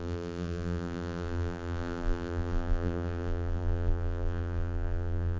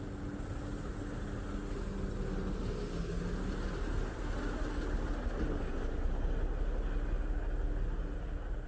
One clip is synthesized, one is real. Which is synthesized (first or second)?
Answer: first